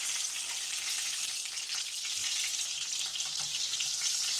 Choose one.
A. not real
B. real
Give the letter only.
B